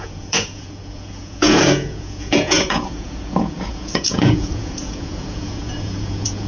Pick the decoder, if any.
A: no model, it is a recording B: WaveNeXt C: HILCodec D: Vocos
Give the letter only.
D